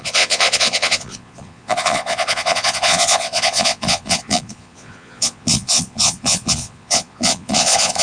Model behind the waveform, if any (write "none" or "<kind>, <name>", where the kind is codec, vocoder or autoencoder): vocoder, Vocos